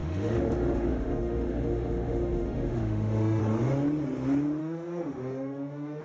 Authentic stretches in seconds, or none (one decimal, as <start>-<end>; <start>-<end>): 3.4-4.6